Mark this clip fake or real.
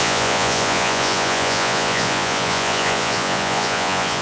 fake